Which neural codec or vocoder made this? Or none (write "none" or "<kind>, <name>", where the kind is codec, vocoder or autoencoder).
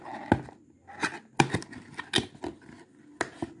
none